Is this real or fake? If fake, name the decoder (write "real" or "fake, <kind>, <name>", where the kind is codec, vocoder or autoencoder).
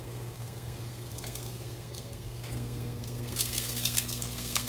fake, codec, SNAC